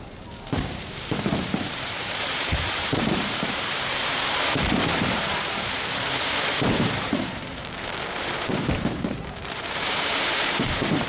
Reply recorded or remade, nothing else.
remade